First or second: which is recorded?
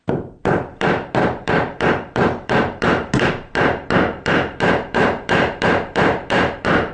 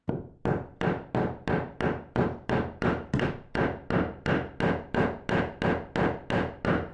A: second